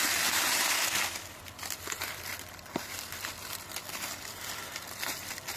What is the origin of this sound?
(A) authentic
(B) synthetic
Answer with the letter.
A